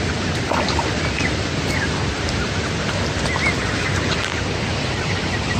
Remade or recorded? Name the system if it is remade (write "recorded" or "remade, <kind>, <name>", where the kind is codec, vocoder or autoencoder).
recorded